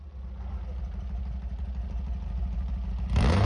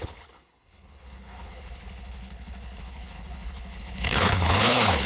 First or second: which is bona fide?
first